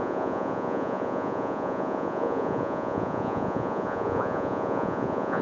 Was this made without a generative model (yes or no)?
no